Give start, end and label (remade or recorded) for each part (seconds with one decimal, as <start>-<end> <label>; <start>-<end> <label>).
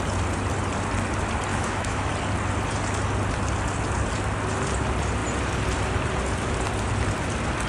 0.0-1.5 recorded; 1.5-2.1 remade; 2.1-7.7 recorded